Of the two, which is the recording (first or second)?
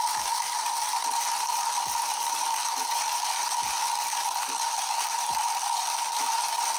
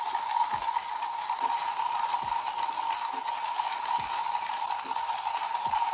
second